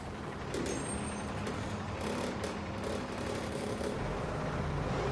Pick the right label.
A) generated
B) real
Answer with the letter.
B